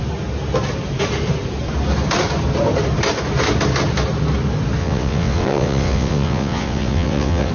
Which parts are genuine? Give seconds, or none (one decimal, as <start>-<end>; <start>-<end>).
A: 0.0-4.8